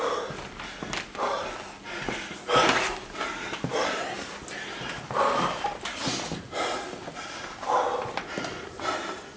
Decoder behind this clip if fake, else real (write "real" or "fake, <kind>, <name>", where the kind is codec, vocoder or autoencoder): real